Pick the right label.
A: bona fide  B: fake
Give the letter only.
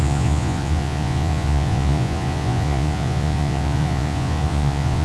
B